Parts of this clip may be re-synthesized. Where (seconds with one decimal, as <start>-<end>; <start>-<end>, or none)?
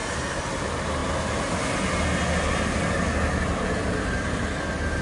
none